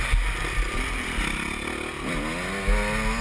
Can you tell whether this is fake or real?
real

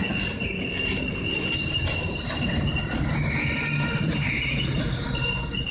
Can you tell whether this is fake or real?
real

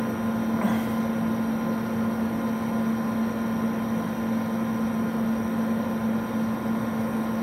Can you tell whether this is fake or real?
real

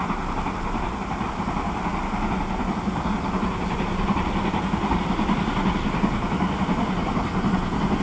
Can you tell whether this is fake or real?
real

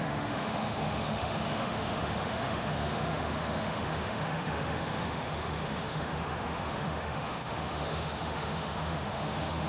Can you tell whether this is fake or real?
fake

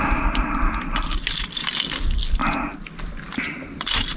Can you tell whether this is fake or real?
real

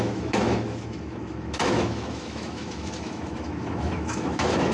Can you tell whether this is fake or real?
fake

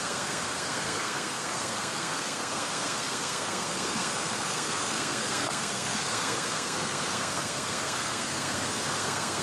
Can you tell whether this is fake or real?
fake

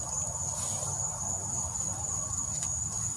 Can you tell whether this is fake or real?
real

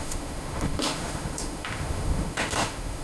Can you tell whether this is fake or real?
fake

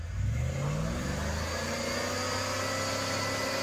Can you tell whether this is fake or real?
real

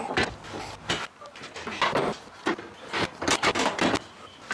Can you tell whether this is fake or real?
real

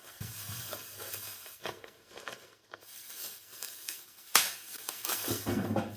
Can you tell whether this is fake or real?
fake